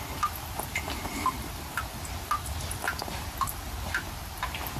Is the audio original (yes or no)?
yes